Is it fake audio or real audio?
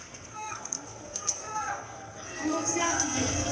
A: fake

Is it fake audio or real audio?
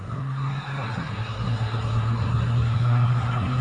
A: fake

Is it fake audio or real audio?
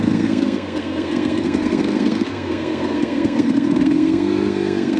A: fake